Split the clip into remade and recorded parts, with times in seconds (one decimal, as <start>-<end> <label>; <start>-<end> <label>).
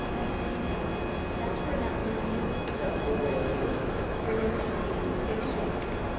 0.0-2.0 recorded; 2.0-4.6 remade; 4.6-6.2 recorded